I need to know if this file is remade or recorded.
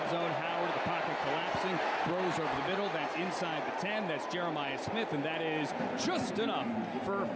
recorded